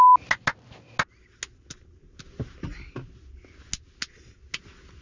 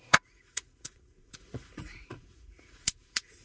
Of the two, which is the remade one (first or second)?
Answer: second